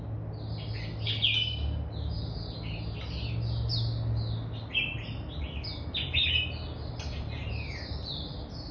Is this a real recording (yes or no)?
yes